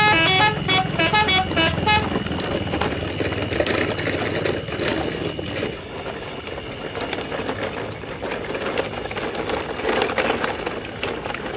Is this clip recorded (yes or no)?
yes